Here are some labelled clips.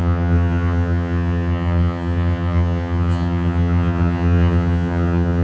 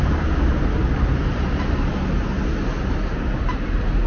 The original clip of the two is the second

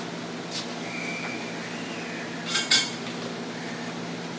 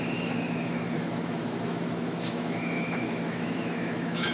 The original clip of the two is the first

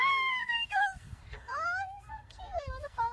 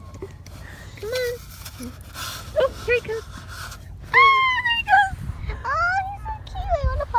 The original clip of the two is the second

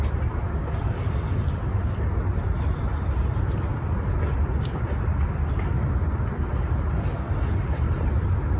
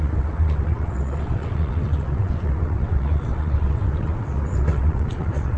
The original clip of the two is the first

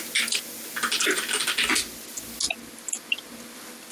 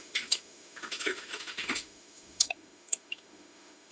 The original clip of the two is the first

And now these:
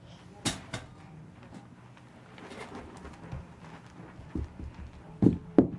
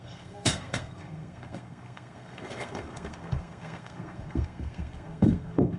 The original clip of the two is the first